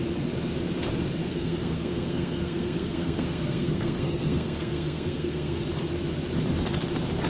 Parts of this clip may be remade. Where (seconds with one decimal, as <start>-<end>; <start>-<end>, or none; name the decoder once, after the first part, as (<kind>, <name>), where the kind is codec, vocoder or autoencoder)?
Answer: 1.2-5.6 (codec, SNAC)